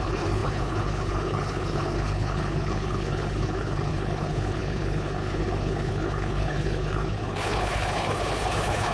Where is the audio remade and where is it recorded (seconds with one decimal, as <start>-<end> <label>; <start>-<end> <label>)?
0.0-8.9 remade